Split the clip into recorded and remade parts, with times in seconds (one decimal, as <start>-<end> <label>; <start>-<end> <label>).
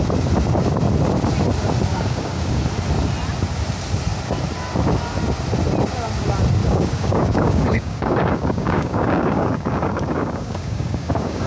0.0-1.9 recorded; 1.9-2.6 remade; 2.6-6.6 recorded; 6.6-11.5 remade